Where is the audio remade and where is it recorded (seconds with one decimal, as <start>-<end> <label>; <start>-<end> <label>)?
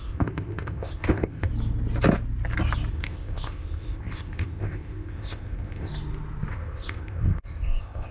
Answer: 0.0-1.5 remade; 1.5-2.9 recorded; 2.9-5.9 remade; 5.9-6.5 recorded; 6.5-8.1 remade